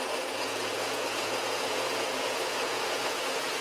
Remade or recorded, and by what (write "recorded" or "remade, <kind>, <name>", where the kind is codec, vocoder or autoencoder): remade, vocoder, Vocos